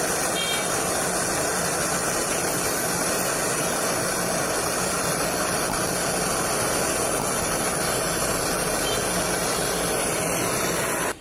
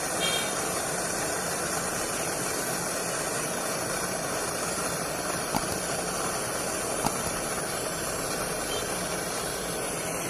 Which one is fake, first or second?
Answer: second